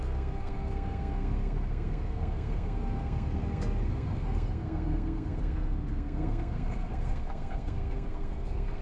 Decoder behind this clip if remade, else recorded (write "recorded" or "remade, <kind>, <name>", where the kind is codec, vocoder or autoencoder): remade, codec, SNAC